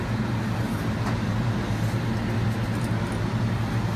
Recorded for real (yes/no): yes